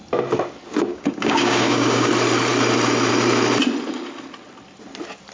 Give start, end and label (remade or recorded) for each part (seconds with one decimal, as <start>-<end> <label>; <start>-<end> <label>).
0.0-0.9 recorded; 0.9-2.1 remade; 2.1-5.3 recorded